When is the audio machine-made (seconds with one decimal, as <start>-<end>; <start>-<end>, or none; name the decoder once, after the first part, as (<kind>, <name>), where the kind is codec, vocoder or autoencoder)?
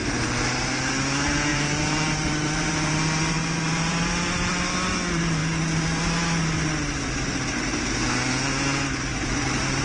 0.0-0.7 (vocoder, BigVGAN v2); 1.5-4.5